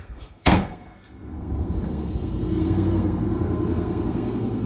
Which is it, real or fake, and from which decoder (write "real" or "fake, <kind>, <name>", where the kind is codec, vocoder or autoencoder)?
fake, codec, SNAC